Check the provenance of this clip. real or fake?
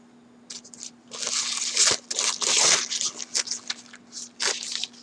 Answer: real